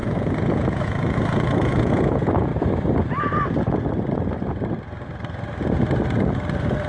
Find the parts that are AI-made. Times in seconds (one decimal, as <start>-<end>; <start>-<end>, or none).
0.0-2.5